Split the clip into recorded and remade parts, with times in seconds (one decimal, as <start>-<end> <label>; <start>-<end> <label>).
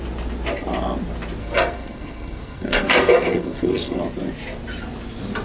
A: 0.0-1.4 recorded; 1.4-4.0 remade; 4.0-5.4 recorded